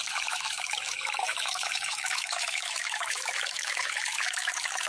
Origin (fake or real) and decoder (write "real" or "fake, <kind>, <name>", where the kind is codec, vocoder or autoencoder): fake, autoencoder, DAC-VAE